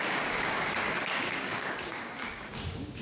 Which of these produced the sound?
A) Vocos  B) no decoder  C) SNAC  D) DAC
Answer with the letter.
D